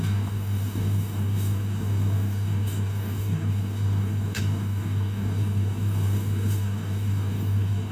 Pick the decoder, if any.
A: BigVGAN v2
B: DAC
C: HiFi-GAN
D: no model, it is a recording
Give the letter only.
B